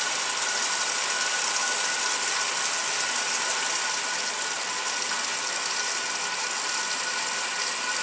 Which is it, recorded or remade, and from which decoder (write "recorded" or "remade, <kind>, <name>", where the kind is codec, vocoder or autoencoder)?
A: recorded